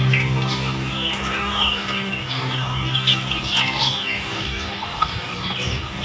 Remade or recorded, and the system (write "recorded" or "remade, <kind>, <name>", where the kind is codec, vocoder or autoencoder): remade, codec, DAC